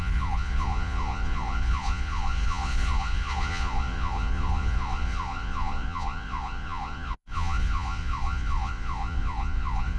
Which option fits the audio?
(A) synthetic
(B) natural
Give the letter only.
A